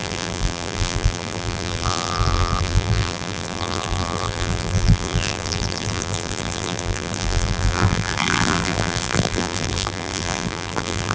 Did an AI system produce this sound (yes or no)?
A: yes